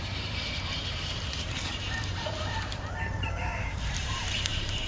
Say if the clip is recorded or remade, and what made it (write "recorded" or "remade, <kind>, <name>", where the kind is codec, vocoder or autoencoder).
remade, vocoder, BigVGAN v2